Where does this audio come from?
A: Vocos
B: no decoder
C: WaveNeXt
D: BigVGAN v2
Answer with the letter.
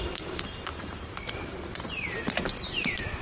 D